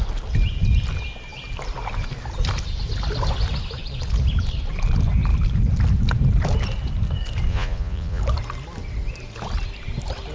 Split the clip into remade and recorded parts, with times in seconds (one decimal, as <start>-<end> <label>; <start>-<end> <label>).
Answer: 0.0-7.5 recorded; 7.5-8.2 remade; 8.2-10.3 recorded